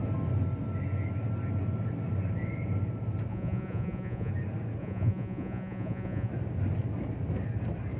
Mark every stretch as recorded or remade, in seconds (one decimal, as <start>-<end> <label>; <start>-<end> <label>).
0.0-3.3 recorded; 3.3-4.3 remade; 4.3-4.8 recorded; 4.8-6.3 remade; 6.3-8.0 recorded